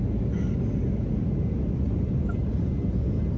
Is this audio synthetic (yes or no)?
no